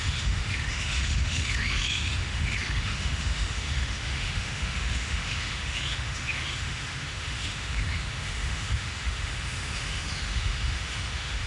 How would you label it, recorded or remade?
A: remade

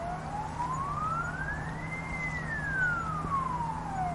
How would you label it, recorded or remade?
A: recorded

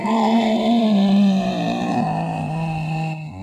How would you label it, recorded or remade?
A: recorded